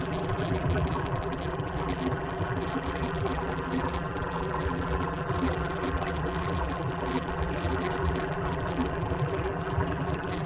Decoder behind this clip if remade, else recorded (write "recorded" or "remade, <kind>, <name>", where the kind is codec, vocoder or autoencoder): remade, vocoder, BigVGAN v2